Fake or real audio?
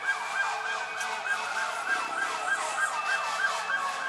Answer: real